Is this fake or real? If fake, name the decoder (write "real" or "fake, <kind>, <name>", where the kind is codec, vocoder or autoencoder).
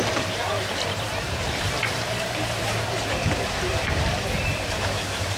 fake, vocoder, BigVGAN v2